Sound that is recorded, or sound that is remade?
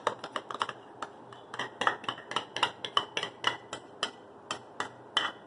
recorded